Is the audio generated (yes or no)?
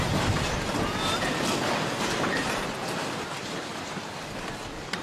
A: yes